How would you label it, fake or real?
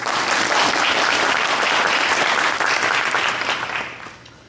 real